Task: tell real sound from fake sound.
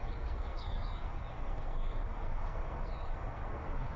fake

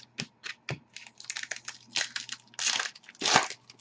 real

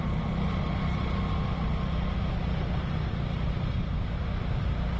real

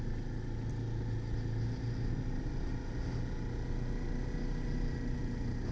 real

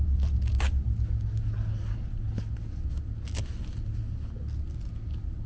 real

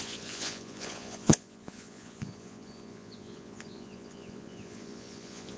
fake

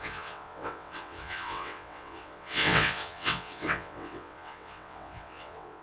fake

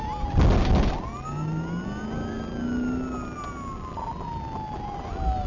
real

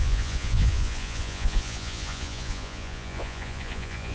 fake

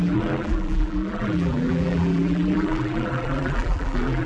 fake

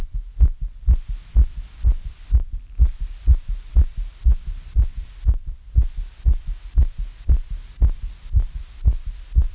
real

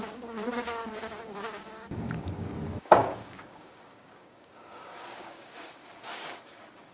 fake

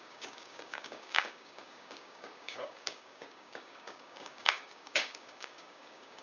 fake